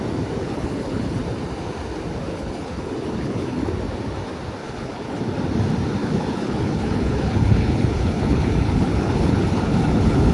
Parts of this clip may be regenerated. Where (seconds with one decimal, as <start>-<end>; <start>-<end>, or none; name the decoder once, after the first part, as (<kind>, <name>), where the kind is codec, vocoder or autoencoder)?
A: 0.4-1.2 (codec, HILCodec); 2.3-3.7; 4.6-5.2; 6.0-10.3

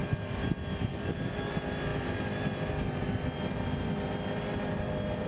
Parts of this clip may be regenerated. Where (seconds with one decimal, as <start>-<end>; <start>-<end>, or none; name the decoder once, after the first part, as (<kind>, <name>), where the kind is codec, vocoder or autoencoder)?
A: 0.9-1.5 (codec, DAC)

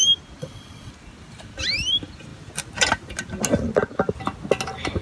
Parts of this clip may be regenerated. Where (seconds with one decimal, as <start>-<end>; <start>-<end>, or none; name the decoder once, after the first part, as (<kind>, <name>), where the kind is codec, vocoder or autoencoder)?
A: 0.4-0.9 (vocoder, WaveNeXt)

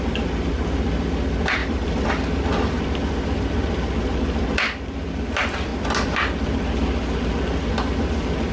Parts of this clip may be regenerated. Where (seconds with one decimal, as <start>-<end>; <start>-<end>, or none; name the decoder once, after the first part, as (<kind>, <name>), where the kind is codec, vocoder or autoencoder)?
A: 1.6-2.1 (vocoder, BigVGAN v2)